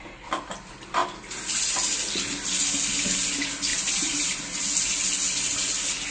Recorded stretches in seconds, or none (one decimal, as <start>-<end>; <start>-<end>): 0.0-3.7; 4.4-6.1

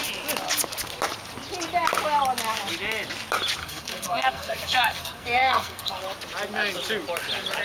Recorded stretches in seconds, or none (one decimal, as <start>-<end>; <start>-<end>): 0.0-3.6; 6.0-7.6